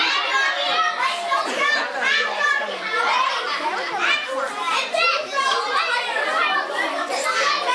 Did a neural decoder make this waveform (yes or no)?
no